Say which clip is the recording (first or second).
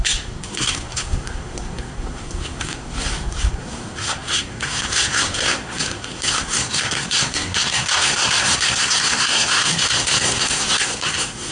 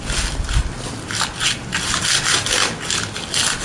second